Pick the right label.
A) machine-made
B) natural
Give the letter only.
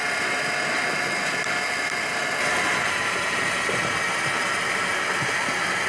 B